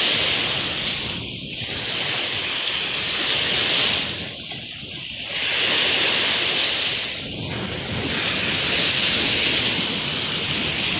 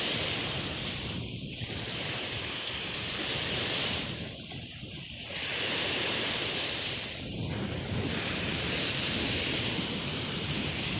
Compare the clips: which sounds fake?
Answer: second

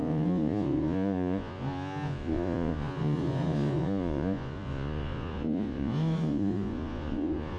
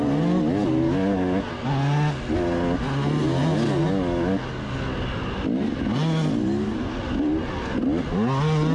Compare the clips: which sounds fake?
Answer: first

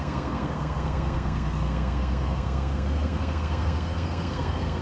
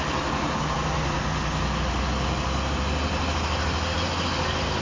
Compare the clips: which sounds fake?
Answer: first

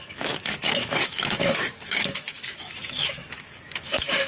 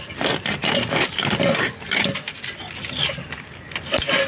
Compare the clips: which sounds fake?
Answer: first